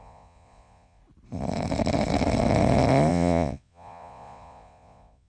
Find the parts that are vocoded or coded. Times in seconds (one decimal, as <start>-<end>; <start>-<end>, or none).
0.0-1.0; 3.1-5.3